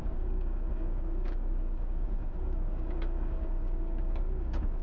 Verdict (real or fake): fake